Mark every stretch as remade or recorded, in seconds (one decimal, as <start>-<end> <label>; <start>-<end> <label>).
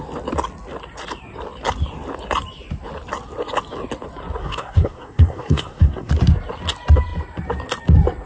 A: 0.0-4.4 recorded; 4.4-6.1 remade; 6.1-8.3 recorded